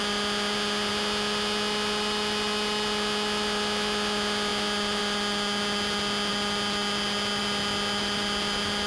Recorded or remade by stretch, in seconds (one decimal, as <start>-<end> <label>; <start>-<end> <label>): 0.0-8.9 recorded